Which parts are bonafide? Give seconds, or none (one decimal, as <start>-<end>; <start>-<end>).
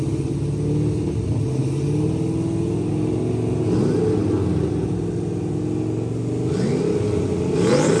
0.0-8.0